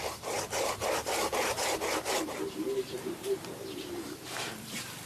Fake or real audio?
fake